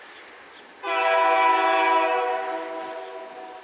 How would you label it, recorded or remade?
recorded